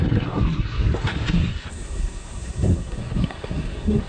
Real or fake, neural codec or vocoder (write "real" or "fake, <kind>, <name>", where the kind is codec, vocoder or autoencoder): fake, codec, SNAC